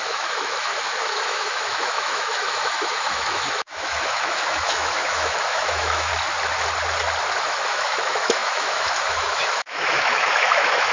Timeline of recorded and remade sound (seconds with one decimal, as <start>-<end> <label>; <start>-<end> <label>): 0.0-6.1 remade; 6.1-7.4 recorded; 7.4-10.9 remade